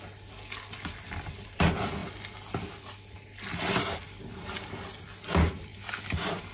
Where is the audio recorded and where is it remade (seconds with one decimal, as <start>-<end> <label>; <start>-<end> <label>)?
0.0-6.5 recorded